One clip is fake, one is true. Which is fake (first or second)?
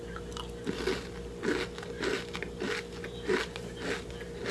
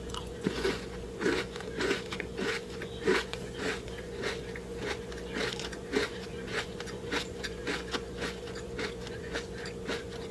second